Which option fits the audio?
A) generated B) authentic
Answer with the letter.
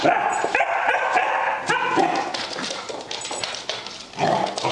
A